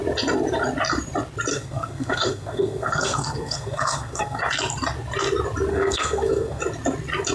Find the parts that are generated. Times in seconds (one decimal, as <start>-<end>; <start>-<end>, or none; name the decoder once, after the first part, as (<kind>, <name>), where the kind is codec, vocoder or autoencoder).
1.5-4.4 (codec, SNAC); 5.7-6.6